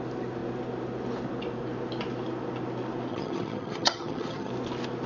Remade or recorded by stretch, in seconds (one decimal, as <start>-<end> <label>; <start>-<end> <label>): 0.0-3.1 recorded; 3.1-4.5 remade; 4.5-5.1 recorded